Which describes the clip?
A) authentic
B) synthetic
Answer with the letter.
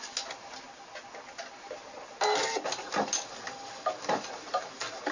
A